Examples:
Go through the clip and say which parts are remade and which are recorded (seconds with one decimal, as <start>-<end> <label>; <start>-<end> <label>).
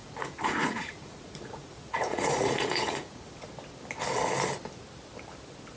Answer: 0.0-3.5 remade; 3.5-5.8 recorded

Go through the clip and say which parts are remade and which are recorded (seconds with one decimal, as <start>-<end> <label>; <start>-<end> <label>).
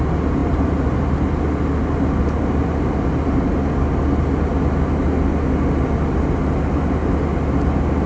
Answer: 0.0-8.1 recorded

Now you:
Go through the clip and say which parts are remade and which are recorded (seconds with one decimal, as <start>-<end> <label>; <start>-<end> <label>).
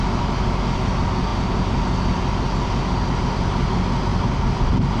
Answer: 0.0-5.0 recorded